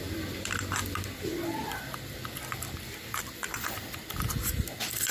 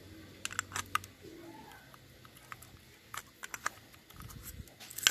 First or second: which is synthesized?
first